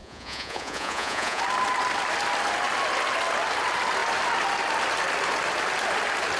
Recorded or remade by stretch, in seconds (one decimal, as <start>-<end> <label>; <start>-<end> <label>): 0.0-1.4 remade; 1.4-6.4 recorded